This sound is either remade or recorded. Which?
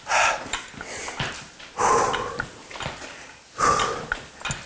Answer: recorded